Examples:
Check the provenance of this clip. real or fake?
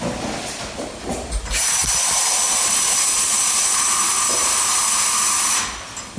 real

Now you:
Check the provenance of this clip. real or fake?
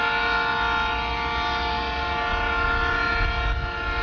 real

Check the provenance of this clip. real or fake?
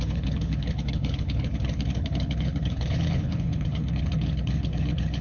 fake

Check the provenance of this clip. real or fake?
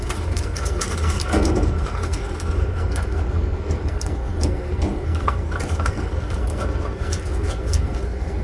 fake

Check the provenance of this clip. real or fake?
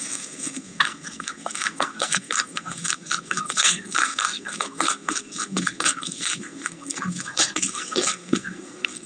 fake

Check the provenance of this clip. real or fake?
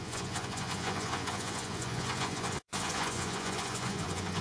fake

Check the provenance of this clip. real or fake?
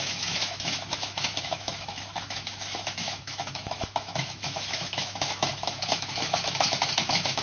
fake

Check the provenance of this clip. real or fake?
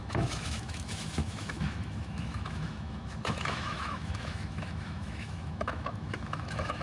fake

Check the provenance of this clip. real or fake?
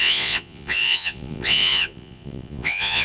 fake